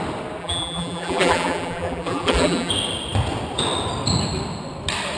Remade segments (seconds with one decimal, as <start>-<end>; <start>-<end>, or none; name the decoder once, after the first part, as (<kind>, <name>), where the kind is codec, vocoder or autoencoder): 0.4-2.7 (vocoder, BigVGAN v2)